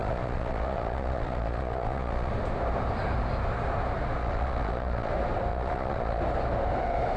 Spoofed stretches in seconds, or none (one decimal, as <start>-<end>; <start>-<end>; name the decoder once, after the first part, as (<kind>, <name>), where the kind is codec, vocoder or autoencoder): 0.0-2.3 (vocoder, Vocos); 4.2-5.1; 5.5-6.2

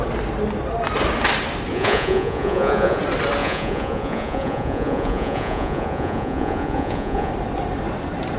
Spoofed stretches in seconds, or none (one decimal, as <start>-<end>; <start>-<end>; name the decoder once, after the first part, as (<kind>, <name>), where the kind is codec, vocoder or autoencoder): 1.7-3.0 (vocoder, Vocos); 3.4-7.3

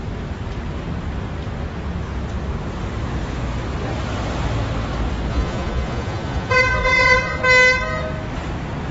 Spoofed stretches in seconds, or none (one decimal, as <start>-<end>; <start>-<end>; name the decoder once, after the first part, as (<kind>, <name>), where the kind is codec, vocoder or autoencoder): 5.3-7.4 (vocoder, Vocos)

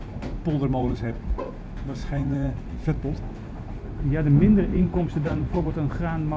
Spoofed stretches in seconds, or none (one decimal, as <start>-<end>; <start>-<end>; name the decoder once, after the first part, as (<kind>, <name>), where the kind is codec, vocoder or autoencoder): 0.8-1.5 (vocoder, Vocos); 2.0-3.0; 4.7-5.7

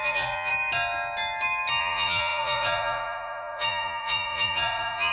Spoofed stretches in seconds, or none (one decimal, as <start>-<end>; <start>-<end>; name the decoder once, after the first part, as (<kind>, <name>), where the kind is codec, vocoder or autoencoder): 0.0-0.5 (vocoder, Vocos); 1.8-5.1